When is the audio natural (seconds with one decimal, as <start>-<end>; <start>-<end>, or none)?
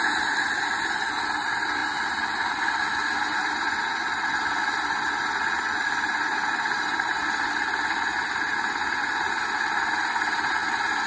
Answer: 0.0-11.1